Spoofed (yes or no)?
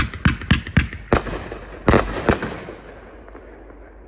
no